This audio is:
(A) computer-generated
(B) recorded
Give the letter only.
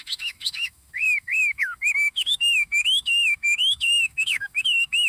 A